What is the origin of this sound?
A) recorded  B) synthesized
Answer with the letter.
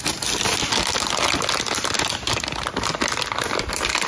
A